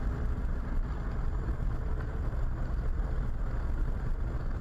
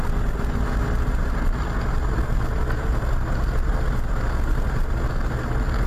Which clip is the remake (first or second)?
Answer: first